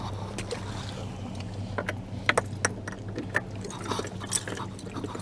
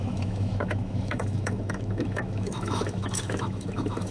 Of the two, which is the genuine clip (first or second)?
first